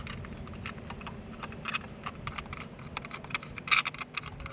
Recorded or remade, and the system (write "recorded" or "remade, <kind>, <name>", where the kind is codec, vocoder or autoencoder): recorded